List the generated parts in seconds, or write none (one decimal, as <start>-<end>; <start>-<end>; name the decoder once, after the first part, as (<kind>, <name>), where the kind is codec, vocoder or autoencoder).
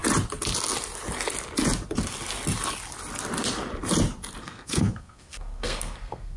4.4-6.4 (codec, SNAC)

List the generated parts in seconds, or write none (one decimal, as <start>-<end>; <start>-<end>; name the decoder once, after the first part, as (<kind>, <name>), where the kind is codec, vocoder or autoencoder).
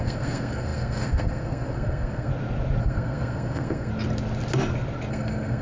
0.0-2.3 (codec, SNAC); 2.8-3.9; 5.1-5.6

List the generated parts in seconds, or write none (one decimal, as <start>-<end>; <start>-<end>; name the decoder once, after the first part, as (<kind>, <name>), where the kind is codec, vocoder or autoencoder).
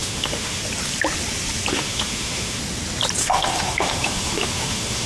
0.0-0.6 (autoencoder, DAC-VAE); 1.7-2.6; 3.2-5.1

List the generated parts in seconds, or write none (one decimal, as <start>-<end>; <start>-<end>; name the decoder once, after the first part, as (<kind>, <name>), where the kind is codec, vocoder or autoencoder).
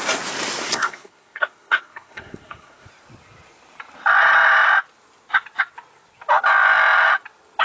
0.6-2.9 (codec, SNAC)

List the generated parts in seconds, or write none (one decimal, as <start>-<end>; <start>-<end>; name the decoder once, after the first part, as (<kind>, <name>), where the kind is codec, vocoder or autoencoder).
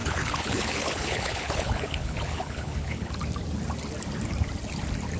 0.0-3.1 (codec, HILCodec)